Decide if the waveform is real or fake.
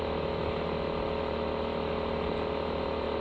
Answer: real